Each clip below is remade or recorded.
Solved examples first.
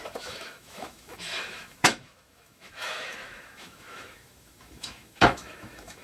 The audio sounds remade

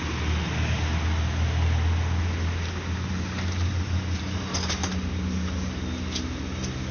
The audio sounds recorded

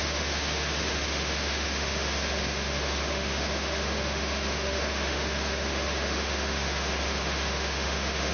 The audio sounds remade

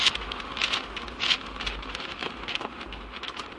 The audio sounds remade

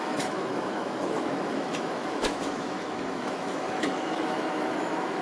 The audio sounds remade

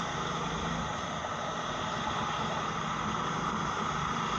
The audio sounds recorded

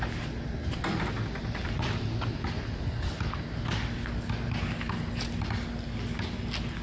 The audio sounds recorded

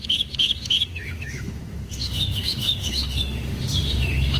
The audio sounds remade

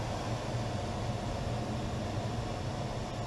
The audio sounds recorded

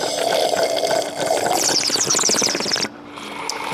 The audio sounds recorded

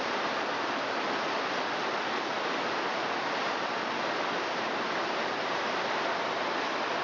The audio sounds recorded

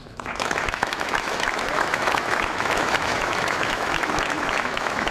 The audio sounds remade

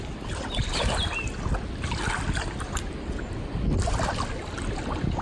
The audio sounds recorded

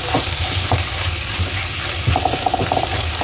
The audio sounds recorded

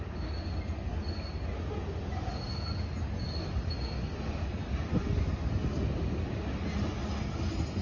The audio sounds recorded